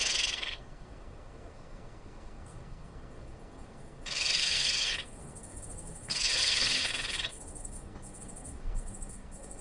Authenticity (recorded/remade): remade